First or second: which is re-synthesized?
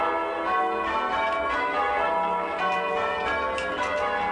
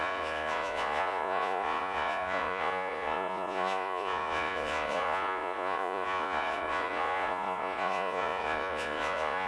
second